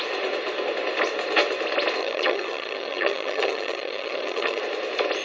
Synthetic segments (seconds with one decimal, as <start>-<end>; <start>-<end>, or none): 2.0-4.6